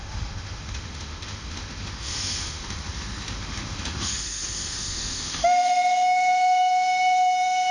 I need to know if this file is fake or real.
fake